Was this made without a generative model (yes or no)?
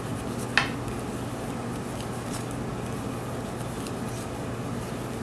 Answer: yes